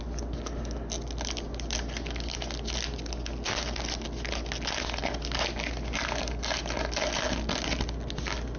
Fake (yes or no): no